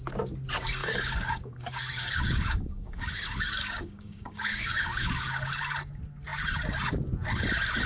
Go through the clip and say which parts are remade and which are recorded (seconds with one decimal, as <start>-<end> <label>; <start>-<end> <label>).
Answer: 0.0-0.8 recorded; 0.8-5.5 remade; 5.5-7.9 recorded

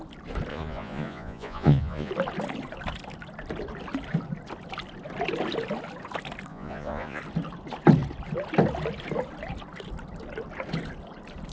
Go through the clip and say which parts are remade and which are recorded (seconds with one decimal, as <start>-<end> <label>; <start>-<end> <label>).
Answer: 0.0-0.5 recorded; 0.5-2.1 remade; 2.1-6.5 recorded; 6.5-7.2 remade; 7.2-11.5 recorded